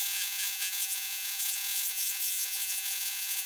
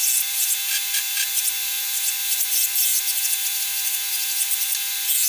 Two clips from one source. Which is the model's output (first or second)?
first